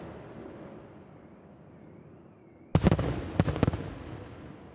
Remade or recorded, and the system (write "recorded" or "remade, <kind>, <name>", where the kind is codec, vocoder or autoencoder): recorded